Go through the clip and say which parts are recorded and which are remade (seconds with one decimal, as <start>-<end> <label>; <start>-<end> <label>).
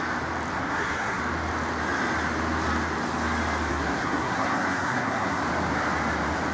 0.0-0.5 recorded; 0.5-1.2 remade; 1.2-3.7 recorded; 3.7-5.4 remade; 5.4-6.5 recorded